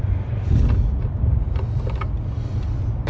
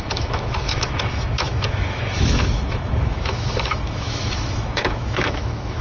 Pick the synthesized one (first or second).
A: second